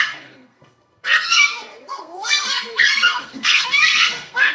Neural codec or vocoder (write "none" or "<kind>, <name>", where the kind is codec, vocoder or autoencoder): codec, SNAC